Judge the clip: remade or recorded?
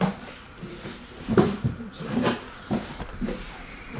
remade